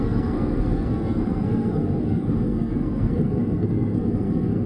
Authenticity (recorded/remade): remade